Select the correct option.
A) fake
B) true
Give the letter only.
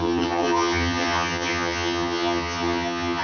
A